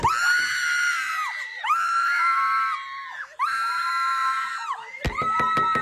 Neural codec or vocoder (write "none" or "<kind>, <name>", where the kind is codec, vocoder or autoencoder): none